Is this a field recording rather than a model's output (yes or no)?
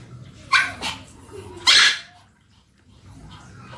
yes